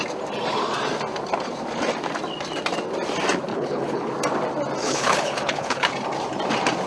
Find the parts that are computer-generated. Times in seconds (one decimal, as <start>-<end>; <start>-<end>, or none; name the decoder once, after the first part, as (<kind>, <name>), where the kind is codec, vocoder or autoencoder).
3.5-4.1 (codec, HILCodec); 4.8-5.9